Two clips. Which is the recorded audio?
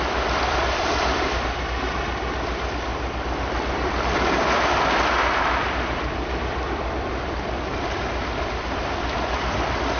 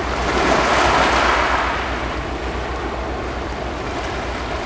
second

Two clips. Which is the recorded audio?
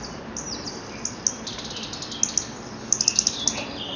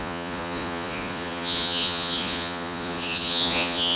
first